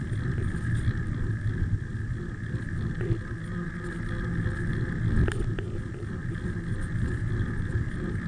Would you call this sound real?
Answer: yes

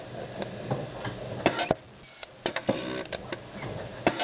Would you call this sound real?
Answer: yes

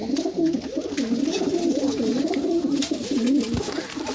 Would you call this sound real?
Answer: yes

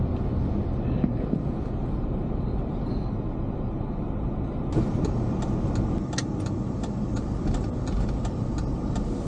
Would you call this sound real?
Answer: yes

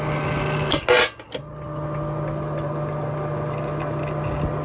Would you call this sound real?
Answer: yes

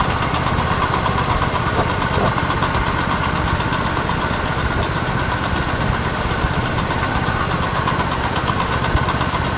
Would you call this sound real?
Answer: yes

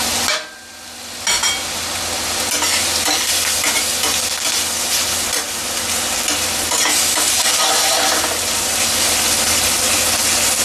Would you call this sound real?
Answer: yes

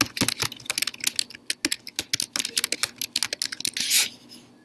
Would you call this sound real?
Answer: yes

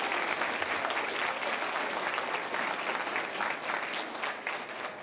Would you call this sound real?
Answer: yes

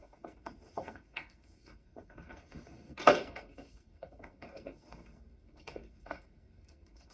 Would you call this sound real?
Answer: no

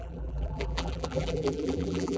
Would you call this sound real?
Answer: no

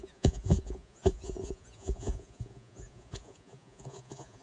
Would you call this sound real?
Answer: no